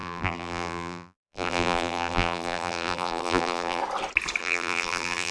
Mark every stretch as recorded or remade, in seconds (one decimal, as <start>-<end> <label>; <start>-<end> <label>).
0.0-3.8 remade; 3.8-4.4 recorded; 4.4-5.3 remade